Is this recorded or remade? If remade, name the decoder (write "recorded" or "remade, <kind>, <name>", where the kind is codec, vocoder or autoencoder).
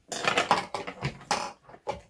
recorded